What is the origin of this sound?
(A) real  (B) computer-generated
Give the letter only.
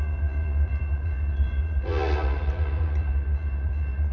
B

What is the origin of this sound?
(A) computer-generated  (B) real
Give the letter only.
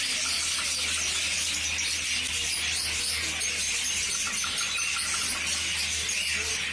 B